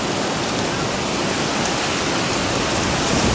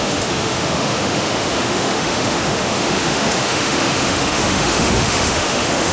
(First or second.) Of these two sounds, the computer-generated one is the second